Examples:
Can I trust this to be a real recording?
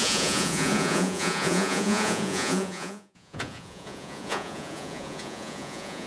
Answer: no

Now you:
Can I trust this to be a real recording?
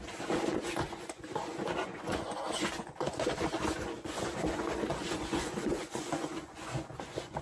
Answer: no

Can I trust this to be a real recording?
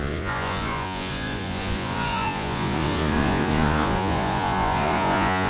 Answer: no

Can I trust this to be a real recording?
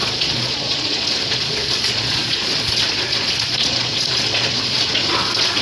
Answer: no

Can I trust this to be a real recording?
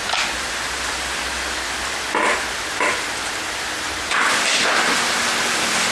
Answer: yes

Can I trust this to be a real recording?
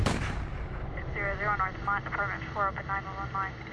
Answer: yes